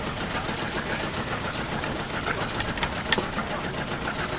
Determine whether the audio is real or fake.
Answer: fake